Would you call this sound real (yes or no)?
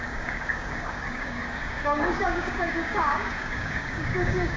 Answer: no